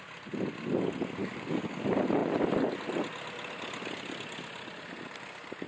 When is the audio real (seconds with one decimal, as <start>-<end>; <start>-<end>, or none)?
0.0-1.2; 1.8-5.7

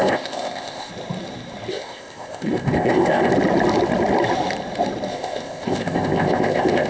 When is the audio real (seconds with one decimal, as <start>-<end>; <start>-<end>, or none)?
0.9-1.7; 3.3-5.1

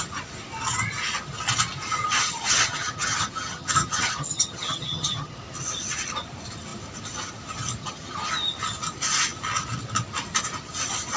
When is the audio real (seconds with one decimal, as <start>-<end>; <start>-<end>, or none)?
0.0-2.0; 5.3-7.8; 8.3-11.2

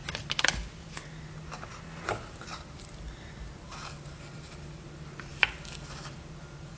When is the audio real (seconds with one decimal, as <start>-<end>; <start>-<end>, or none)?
0.0-6.8

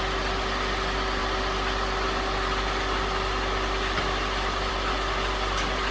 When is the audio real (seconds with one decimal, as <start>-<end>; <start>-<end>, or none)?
0.0-1.2; 4.7-5.9

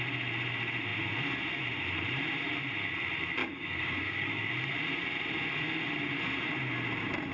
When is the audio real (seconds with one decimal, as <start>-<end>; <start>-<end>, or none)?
0.0-3.4; 4.5-7.3